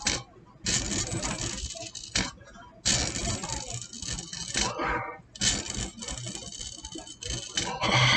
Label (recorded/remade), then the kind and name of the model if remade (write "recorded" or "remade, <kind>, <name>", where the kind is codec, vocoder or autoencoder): recorded